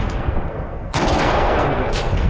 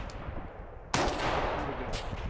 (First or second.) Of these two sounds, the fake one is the first